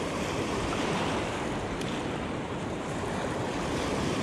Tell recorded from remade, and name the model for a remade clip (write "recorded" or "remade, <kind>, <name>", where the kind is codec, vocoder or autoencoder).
recorded